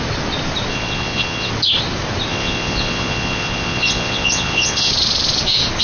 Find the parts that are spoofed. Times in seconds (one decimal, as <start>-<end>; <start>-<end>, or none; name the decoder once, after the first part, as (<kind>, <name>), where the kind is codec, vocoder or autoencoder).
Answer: 0.7-1.5 (vocoder, Vocos); 2.3-4.9